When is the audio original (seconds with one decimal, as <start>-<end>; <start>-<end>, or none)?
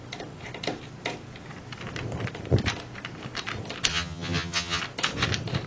0.0-3.9; 4.8-5.7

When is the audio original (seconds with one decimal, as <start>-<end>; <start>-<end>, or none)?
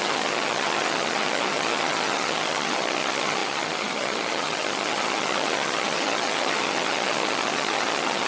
none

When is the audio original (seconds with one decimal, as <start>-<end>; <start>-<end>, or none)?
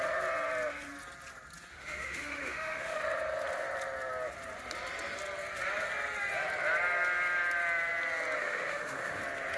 0.0-1.7; 3.0-8.4; 9.2-9.6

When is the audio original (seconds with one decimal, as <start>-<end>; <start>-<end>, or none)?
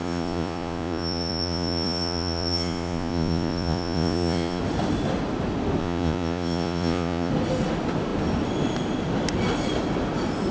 4.6-5.8; 7.3-10.5